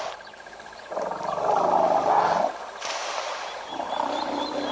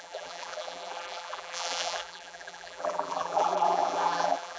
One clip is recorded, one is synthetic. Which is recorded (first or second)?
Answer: first